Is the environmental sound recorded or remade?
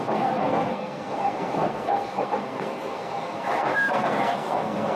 remade